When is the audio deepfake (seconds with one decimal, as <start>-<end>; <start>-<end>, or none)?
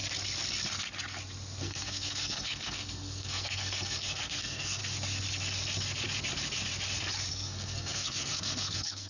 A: 1.6-4.8; 7.3-9.1